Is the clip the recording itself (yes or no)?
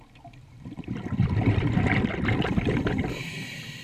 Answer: yes